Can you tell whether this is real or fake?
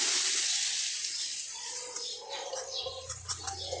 real